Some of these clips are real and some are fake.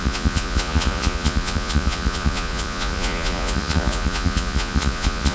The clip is fake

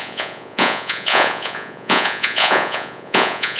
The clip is fake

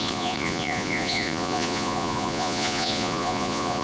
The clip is fake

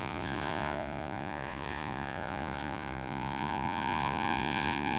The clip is fake